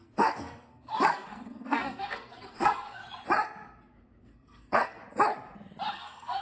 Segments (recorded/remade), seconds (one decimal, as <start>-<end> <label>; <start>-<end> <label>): 0.0-3.0 remade; 3.0-4.2 recorded; 4.2-5.0 remade; 5.0-5.9 recorded; 5.9-6.4 remade